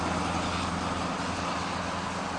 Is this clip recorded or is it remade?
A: recorded